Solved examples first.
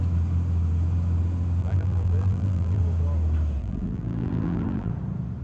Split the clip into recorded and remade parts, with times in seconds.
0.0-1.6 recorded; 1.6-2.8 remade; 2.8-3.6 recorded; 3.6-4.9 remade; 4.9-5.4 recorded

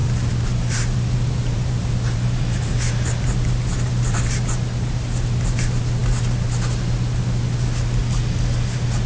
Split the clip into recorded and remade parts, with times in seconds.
0.0-4.9 remade; 4.9-9.1 recorded

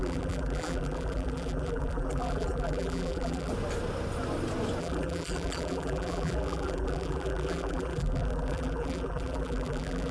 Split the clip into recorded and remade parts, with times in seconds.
0.0-3.5 remade; 3.5-4.8 recorded; 4.8-10.1 remade

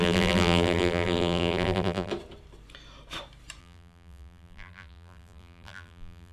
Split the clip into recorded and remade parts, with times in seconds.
0.0-2.1 remade; 2.1-3.6 recorded; 3.6-6.3 remade